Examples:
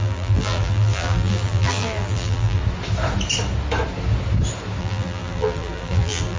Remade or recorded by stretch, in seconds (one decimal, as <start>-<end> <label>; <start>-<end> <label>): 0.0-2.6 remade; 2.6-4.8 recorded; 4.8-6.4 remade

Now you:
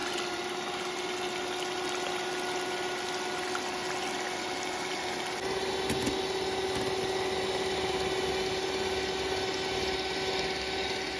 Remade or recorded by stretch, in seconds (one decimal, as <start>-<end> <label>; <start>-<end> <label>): 0.0-1.1 remade; 1.1-11.2 recorded

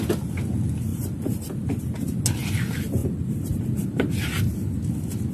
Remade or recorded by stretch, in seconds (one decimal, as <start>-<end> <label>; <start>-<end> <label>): 0.0-0.9 recorded; 0.9-1.8 remade; 1.8-3.0 recorded; 3.0-3.6 remade; 3.6-5.3 recorded

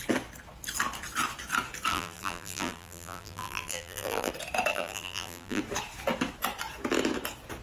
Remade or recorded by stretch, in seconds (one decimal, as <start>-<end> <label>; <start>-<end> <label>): 0.0-1.9 recorded; 1.9-4.3 remade; 4.3-4.7 recorded; 4.7-5.6 remade; 5.6-7.6 recorded